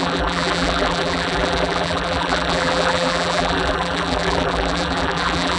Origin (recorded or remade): remade